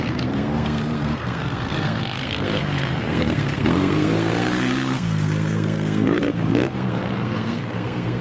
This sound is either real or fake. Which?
fake